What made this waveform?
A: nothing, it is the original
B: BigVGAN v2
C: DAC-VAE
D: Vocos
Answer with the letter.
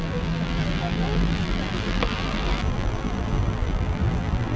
B